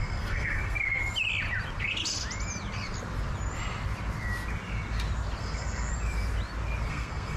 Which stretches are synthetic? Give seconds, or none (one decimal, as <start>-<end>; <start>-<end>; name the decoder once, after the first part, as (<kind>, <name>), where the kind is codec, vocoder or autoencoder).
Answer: 0.0-1.0 (codec, SNAC); 5.4-5.9; 6.9-7.4